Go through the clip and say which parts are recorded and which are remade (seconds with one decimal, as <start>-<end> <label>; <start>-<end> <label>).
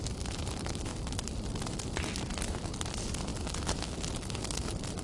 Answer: 0.0-5.0 recorded